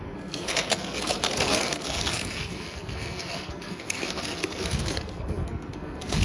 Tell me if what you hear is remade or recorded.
remade